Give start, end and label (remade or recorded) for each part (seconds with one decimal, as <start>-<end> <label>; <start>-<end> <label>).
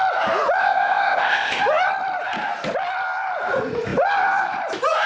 0.0-0.6 recorded; 0.6-1.6 remade; 1.6-5.1 recorded